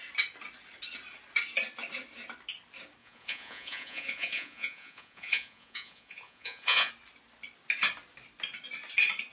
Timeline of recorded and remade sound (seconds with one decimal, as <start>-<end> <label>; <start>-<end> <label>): 0.0-3.0 recorded; 3.0-6.9 remade; 6.9-9.3 recorded